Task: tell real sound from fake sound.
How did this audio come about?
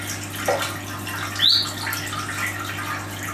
real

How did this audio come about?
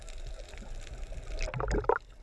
real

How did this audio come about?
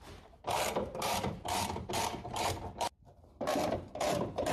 fake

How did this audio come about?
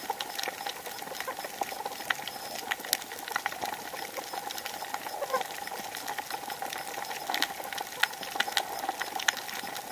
real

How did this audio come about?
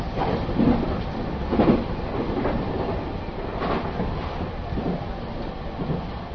real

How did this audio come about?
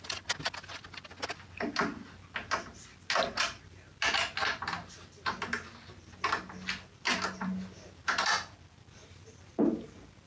real